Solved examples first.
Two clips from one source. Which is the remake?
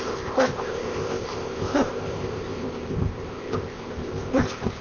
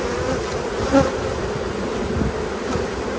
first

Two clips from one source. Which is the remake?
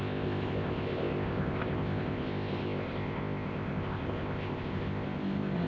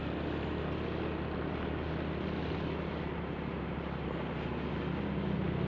first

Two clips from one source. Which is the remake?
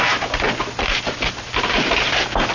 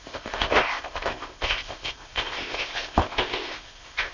second